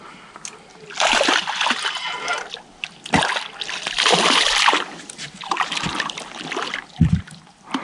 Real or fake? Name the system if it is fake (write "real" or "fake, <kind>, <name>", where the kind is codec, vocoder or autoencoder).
real